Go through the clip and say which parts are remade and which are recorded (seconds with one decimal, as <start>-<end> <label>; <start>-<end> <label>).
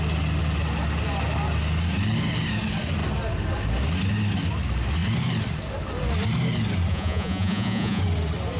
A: 0.0-6.9 recorded; 6.9-8.0 remade; 8.0-8.6 recorded